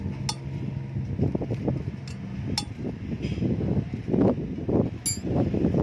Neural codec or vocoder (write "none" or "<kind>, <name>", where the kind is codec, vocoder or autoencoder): none